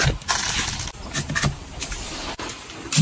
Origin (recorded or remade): recorded